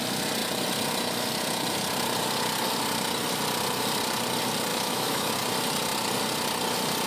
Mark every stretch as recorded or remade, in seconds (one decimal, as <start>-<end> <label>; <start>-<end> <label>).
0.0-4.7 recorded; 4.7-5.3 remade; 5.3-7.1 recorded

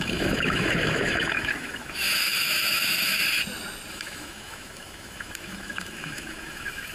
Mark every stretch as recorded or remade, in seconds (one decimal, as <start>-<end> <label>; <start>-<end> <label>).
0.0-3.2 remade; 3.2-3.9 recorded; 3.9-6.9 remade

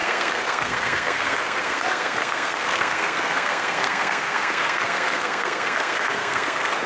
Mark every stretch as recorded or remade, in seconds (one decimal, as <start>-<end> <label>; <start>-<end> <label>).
0.0-6.9 remade

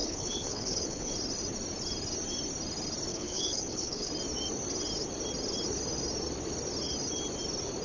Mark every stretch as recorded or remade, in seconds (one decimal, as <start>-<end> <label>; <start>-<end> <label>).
0.0-1.1 remade; 1.1-3.1 recorded; 3.1-4.1 remade; 4.1-7.8 recorded

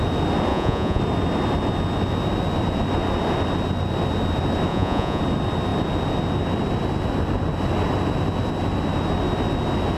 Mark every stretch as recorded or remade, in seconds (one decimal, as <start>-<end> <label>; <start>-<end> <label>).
0.0-0.5 recorded; 0.5-1.0 remade; 1.0-4.7 recorded; 4.7-5.2 remade; 5.2-10.0 recorded